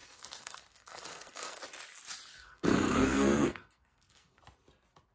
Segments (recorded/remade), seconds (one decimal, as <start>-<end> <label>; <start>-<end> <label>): 0.0-1.6 remade; 1.6-2.3 recorded; 2.3-4.4 remade; 4.4-5.1 recorded